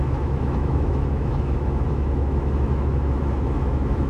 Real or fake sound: fake